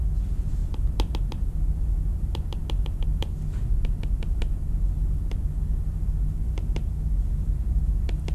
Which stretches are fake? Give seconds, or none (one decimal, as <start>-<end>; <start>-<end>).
none